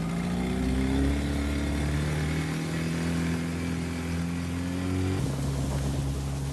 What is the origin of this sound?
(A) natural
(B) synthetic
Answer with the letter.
A